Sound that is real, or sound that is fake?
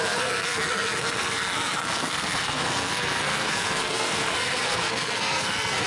fake